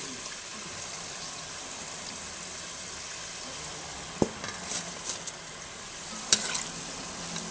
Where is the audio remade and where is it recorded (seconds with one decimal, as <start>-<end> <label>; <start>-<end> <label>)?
0.0-0.5 recorded; 0.5-2.9 remade; 2.9-3.9 recorded; 3.9-6.7 remade; 6.7-7.5 recorded